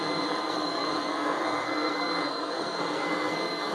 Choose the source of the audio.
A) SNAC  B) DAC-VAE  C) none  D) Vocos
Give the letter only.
A